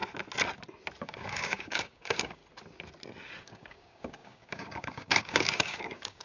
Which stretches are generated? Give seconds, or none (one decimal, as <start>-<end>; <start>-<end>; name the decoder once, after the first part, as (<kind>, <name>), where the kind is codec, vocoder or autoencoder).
1.0-2.4 (codec, DAC); 3.4-6.2